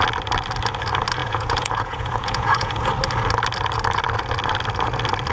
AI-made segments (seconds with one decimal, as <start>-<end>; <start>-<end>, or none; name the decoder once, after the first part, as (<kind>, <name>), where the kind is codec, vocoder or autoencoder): 1.2-2.9 (vocoder, Vocos)